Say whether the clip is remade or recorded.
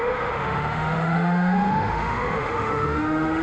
remade